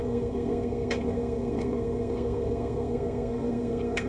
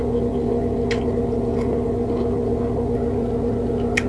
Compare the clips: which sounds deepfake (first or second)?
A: first